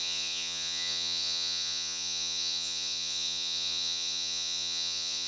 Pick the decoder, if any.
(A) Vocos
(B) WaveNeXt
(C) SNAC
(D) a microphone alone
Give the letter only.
A